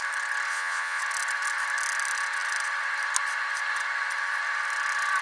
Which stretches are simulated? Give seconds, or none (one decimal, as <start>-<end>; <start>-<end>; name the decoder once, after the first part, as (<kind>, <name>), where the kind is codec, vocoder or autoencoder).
0.5-1.0 (vocoder, Vocos)